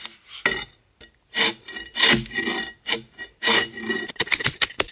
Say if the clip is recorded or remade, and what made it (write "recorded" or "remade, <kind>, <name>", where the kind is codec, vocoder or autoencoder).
recorded